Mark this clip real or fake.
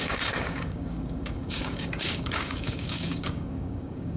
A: fake